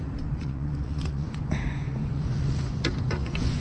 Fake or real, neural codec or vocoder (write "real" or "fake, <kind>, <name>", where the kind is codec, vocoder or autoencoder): fake, vocoder, Vocos